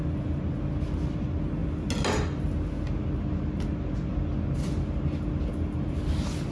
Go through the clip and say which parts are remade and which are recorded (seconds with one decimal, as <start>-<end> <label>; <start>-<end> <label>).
0.0-6.5 recorded